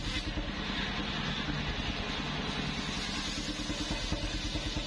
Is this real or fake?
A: real